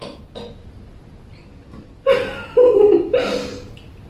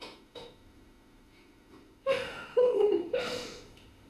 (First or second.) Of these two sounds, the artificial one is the second